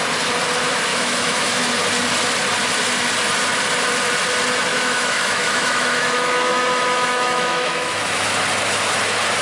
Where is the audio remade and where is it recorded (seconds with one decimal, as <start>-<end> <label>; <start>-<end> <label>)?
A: 0.0-0.9 recorded; 0.9-1.7 remade; 1.7-4.7 recorded; 4.7-8.3 remade; 8.3-9.4 recorded

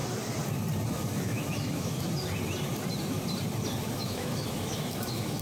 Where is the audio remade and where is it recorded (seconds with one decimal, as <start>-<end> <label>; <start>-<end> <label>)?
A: 0.0-0.9 recorded; 0.9-2.1 remade; 2.1-3.8 recorded; 3.8-5.4 remade

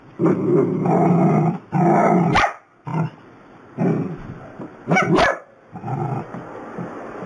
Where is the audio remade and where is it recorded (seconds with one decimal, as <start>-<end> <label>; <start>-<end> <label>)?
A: 0.0-7.3 recorded

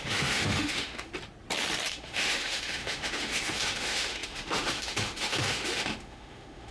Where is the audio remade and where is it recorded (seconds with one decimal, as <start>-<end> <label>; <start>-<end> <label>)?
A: 0.0-1.1 remade; 1.1-1.9 recorded; 1.9-6.7 remade

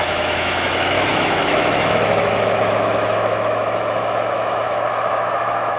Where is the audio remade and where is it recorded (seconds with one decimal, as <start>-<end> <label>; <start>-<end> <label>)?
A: 0.0-5.8 remade

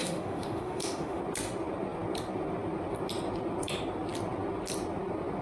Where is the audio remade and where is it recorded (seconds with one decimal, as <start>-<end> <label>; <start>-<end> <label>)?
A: 0.0-1.2 remade; 1.2-5.4 recorded

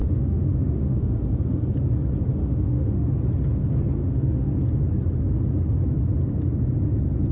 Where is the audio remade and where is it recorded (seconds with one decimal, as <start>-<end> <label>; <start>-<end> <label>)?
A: 0.0-1.1 remade; 1.1-2.4 recorded; 2.4-3.1 remade; 3.1-4.0 recorded; 4.0-4.5 remade; 4.5-7.3 recorded

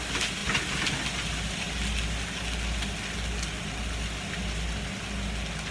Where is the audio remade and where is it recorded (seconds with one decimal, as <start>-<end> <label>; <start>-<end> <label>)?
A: 0.0-5.7 recorded